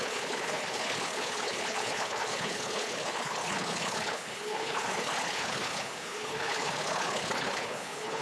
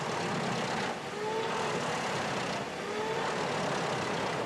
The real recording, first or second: second